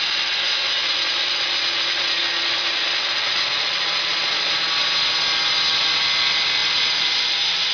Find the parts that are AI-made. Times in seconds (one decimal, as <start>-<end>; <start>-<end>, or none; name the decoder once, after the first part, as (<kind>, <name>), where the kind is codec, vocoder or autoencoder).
none